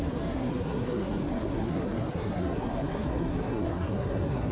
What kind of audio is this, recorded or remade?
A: remade